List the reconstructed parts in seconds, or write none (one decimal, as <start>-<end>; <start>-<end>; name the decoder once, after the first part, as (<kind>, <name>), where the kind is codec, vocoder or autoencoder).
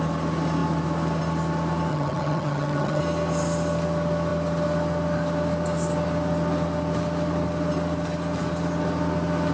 1.9-3.0 (vocoder, HiFi-GAN)